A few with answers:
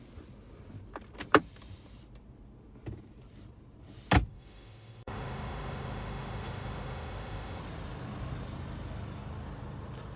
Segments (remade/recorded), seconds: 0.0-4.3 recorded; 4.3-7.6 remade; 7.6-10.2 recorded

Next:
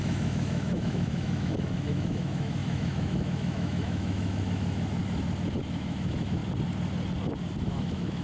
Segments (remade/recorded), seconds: 0.0-5.0 remade; 5.0-5.6 recorded; 5.6-6.4 remade; 6.4-7.6 recorded; 7.6-8.2 remade

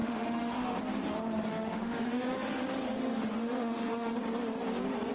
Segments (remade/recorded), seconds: 0.0-0.8 remade; 0.8-1.5 recorded; 1.5-4.2 remade; 4.2-5.1 recorded

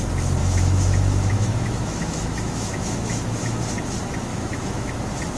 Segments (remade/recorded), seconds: 0.0-0.4 recorded; 0.4-3.6 remade; 3.6-4.3 recorded; 4.3-4.9 remade; 4.9-5.4 recorded